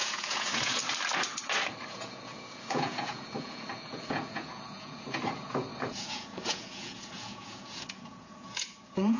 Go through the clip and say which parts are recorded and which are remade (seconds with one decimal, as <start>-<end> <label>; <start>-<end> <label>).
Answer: 0.0-0.8 remade; 0.8-1.9 recorded; 1.9-9.2 remade